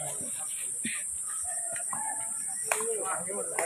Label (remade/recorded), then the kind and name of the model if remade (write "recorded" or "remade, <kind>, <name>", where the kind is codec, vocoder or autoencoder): recorded